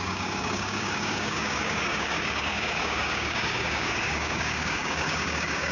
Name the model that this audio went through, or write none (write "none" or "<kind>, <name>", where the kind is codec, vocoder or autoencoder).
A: codec, DAC